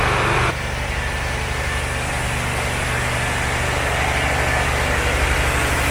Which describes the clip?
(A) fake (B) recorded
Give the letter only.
B